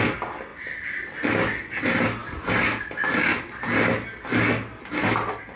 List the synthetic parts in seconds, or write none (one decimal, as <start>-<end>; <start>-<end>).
none

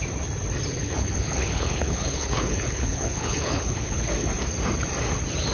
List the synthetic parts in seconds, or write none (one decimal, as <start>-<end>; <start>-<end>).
0.8-4.1

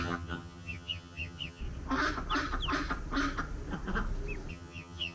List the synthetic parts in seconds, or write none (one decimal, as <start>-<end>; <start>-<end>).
0.0-1.6; 4.5-5.1

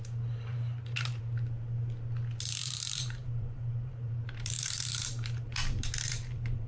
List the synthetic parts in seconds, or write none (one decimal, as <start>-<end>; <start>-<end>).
0.5-1.2; 2.6-6.7

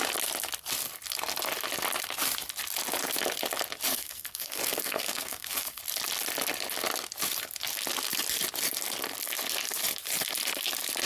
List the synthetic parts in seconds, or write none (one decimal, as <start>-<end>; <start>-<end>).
3.9-5.8

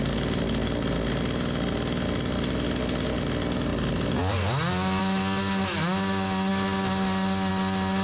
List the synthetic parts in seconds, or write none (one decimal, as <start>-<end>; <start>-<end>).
none

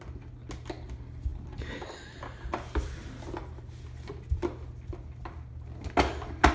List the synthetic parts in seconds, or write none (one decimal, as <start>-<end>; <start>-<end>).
none